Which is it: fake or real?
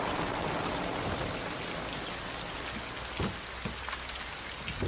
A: real